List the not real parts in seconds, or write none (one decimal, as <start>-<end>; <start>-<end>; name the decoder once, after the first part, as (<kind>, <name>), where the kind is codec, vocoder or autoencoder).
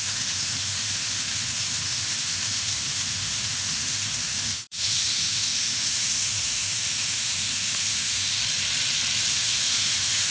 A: 0.0-8.4 (autoencoder, DAC-VAE); 9.3-10.3